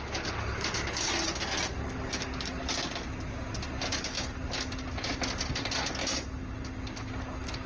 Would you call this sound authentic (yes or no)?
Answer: yes